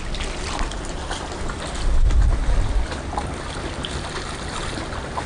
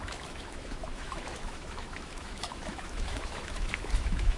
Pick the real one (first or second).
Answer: first